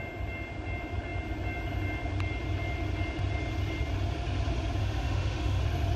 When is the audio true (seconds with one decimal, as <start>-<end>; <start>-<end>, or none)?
0.0-4.8; 5.6-6.0